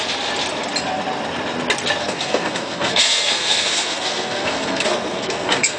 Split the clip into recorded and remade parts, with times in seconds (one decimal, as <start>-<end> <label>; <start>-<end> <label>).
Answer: 0.0-2.0 recorded; 2.0-5.8 remade